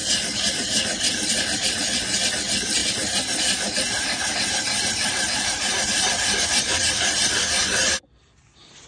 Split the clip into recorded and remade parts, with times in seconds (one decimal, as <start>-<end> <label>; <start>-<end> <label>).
0.0-1.8 remade; 1.8-2.8 recorded; 2.8-6.9 remade; 6.9-8.9 recorded